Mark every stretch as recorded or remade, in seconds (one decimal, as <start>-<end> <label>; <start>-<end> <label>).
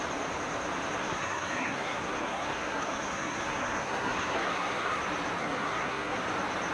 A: 0.0-1.0 recorded; 1.0-5.0 remade; 5.0-5.4 recorded; 5.4-6.2 remade; 6.2-6.7 recorded